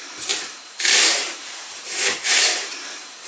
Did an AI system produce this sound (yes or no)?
yes